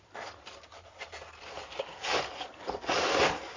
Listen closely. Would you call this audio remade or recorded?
recorded